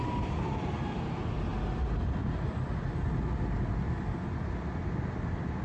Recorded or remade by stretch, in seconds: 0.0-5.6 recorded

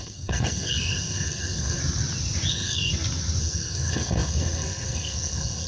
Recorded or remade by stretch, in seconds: 0.0-1.8 remade; 1.8-2.5 recorded; 2.5-2.9 remade; 2.9-3.4 recorded; 3.4-5.7 remade

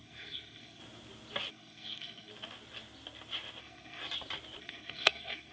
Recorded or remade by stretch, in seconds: 0.0-0.8 remade; 0.8-1.5 recorded; 1.5-2.3 remade; 2.3-3.6 recorded; 3.6-4.0 remade; 4.0-4.6 recorded; 4.6-5.5 remade